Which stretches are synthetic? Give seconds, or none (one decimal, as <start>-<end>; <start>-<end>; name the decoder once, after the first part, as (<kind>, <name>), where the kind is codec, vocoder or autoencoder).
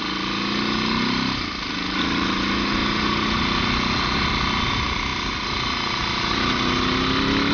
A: none